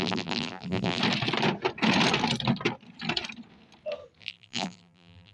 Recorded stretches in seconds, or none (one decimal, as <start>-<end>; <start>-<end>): 1.0-4.2

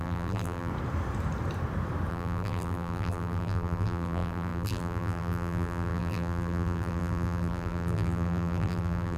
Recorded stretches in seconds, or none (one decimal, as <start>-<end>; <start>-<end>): 0.7-2.1

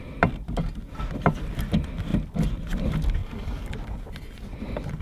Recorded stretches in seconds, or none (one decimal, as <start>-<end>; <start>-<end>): 0.0-3.2; 3.7-5.0

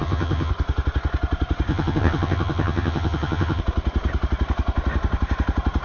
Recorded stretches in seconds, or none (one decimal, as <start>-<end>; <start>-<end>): 0.5-1.7; 3.6-5.8

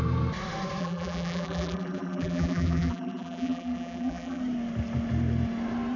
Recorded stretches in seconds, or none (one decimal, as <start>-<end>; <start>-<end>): 0.0-0.8; 4.4-6.0

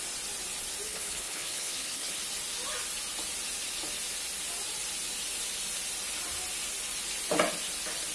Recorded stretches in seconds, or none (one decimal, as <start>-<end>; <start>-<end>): 0.0-0.9; 2.2-8.1

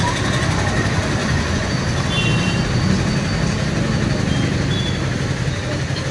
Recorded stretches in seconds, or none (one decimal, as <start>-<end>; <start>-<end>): 0.0-1.2; 1.7-6.1